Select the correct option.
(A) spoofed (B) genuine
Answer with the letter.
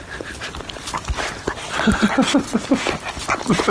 B